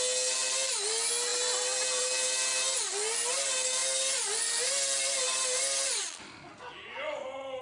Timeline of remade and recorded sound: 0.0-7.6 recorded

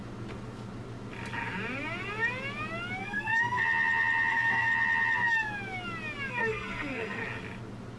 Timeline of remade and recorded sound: 0.0-3.0 recorded; 3.0-3.6 remade; 3.6-4.3 recorded; 4.3-4.7 remade; 4.7-6.3 recorded; 6.3-7.2 remade; 7.2-8.0 recorded